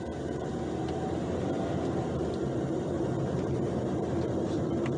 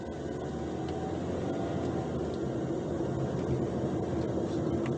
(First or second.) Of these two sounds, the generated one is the first